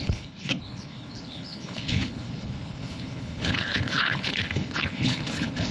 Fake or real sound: fake